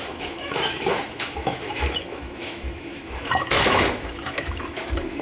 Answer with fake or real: fake